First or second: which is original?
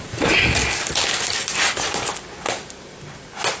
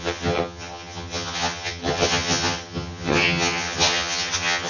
first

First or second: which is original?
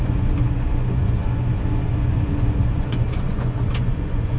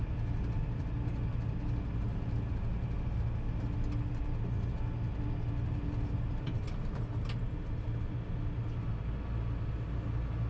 second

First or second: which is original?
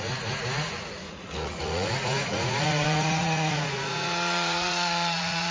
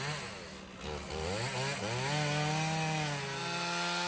second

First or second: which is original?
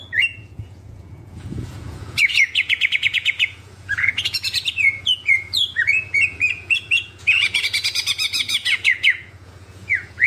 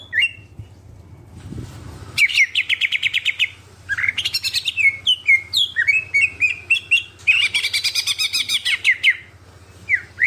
second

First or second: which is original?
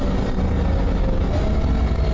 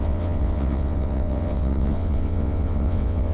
first